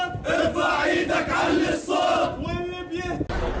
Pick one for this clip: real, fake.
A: real